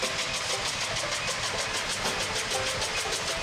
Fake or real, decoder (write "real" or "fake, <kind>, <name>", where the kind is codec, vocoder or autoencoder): real